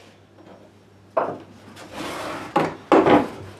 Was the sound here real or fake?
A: real